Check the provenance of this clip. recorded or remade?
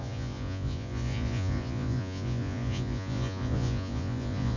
remade